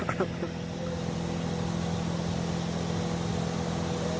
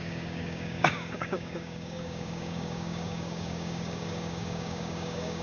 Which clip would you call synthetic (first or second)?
second